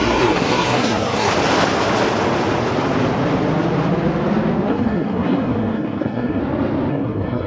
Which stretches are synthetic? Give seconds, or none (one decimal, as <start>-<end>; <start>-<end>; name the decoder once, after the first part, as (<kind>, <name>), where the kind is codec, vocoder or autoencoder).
0.0-1.3 (codec, SNAC); 4.7-6.4; 6.9-7.5